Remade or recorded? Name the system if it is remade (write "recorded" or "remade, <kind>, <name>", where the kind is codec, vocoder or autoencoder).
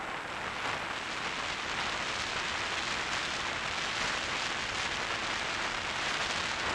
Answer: recorded